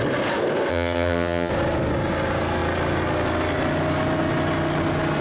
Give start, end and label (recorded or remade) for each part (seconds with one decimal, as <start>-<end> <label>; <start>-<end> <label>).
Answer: 0.0-0.7 recorded; 0.7-1.5 remade; 1.5-5.2 recorded